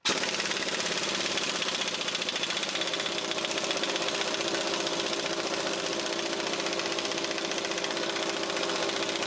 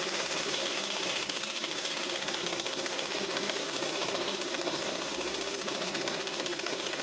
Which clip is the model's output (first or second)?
second